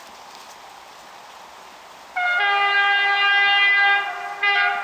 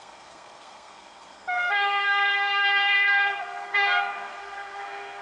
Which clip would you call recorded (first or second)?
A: first